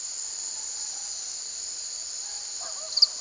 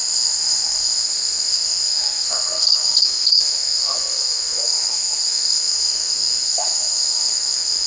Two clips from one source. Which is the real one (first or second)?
first